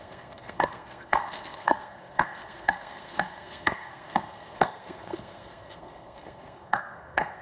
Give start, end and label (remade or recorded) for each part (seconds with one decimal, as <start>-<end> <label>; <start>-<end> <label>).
0.0-7.4 remade